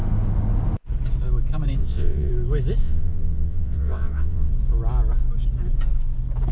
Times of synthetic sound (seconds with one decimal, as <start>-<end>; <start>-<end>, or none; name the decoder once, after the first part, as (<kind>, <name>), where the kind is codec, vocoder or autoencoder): 1.8-2.3 (vocoder, WaveNeXt); 2.8-4.5